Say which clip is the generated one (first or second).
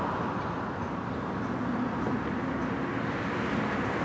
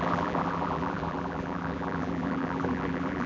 second